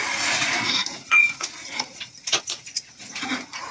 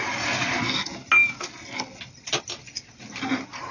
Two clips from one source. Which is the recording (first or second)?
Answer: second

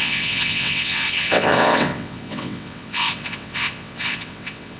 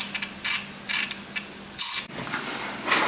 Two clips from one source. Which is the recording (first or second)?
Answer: second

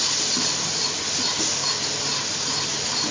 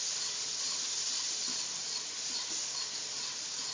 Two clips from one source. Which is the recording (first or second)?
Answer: first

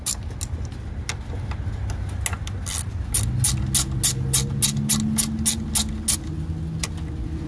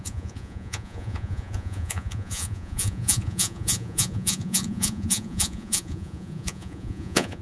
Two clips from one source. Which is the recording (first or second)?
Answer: first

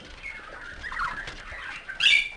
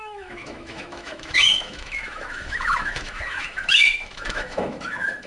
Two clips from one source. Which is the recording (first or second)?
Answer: first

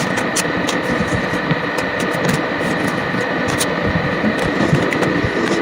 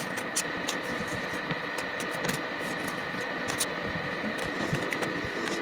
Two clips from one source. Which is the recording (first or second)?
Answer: second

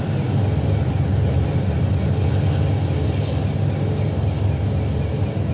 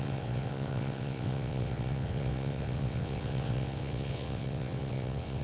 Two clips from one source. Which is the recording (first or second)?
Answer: first